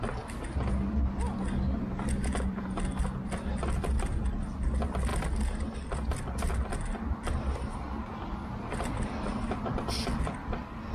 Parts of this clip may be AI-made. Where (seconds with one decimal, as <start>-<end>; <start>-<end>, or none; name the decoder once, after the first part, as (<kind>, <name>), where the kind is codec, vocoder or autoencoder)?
none